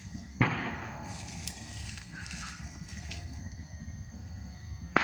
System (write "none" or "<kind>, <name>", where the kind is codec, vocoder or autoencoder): codec, SNAC